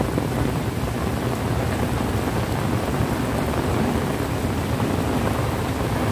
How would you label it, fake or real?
real